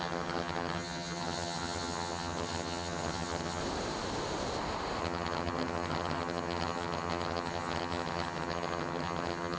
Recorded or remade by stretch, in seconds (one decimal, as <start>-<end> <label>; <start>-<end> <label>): 0.0-3.6 remade; 3.6-5.0 recorded; 5.0-9.6 remade